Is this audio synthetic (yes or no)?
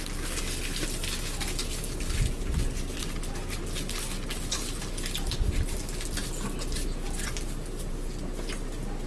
no